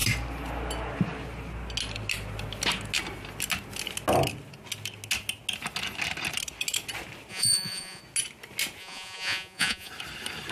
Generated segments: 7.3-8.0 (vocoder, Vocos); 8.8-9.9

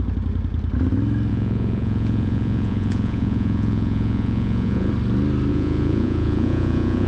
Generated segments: 1.3-4.9 (vocoder, Vocos); 5.5-7.1

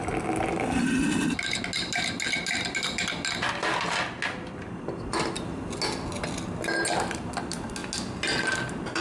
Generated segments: none

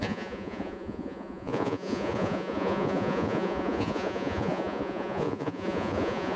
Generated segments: 0.0-6.4 (vocoder, Vocos)

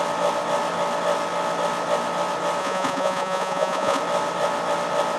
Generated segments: 2.6-4.0 (vocoder, Vocos)